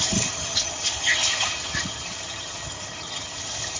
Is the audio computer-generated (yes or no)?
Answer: yes